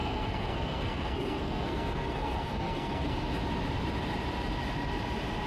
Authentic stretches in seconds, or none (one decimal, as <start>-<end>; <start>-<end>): 3.3-5.5